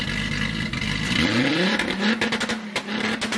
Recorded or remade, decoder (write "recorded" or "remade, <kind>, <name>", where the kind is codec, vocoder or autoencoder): remade, vocoder, BigVGAN v2